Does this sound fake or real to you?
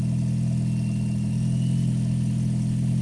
real